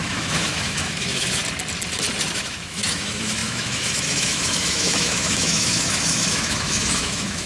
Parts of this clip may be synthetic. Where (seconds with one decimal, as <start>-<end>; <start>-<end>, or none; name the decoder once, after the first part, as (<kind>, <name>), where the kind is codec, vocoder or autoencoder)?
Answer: 0.0-1.4 (autoencoder, DAC-VAE); 2.3-7.5